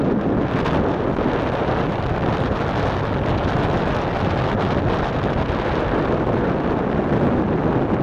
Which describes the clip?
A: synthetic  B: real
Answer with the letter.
B